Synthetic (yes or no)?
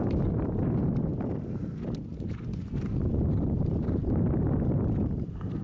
no